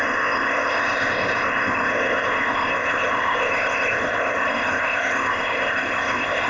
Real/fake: fake